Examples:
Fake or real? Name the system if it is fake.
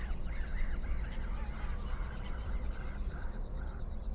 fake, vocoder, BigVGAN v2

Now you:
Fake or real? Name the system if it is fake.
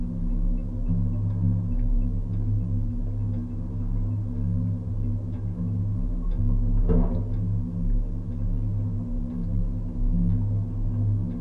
real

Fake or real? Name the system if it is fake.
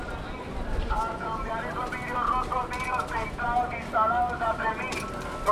real